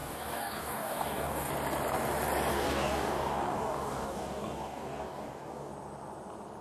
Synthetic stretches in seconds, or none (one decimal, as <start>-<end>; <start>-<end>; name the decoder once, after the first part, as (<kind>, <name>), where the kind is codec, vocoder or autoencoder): 0.0-1.5 (codec, DAC); 2.5-5.7